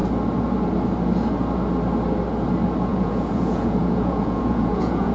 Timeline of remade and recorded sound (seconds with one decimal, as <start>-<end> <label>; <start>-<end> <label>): 0.0-2.9 recorded; 2.9-5.1 remade